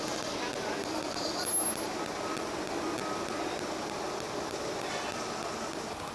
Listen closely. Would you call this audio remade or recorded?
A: recorded